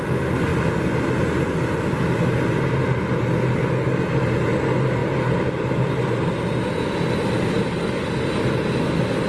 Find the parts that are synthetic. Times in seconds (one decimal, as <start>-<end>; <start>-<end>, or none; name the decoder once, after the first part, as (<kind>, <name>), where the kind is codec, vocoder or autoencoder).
none